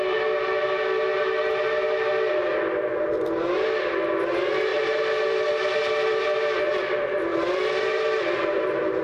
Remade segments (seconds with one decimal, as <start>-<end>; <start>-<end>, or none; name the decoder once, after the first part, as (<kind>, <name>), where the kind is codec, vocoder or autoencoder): 4.7-6.2 (vocoder, BigVGAN v2); 7.3-9.0